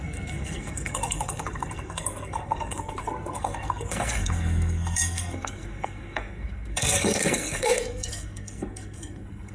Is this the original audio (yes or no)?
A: no